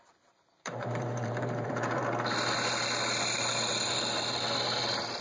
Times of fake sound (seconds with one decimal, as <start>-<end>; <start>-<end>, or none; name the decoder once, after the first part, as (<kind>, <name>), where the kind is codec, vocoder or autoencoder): 0.0-2.0 (vocoder, BigVGAN v2)